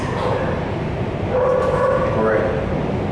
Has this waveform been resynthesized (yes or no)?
no